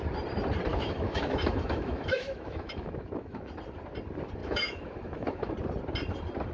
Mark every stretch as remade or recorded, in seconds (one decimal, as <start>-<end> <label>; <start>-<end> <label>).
0.0-0.7 recorded; 0.7-3.5 remade; 3.5-4.4 recorded; 4.4-5.5 remade; 5.5-6.5 recorded